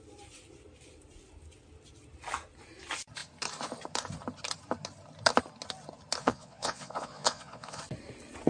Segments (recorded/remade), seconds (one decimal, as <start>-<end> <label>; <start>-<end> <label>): 0.0-6.2 recorded; 6.2-7.8 remade; 7.8-8.5 recorded